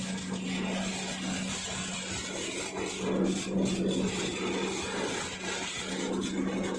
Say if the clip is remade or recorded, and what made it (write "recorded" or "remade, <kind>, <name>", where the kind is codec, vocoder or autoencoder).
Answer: recorded